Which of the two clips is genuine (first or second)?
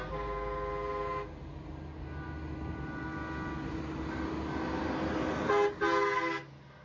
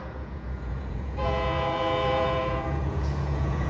first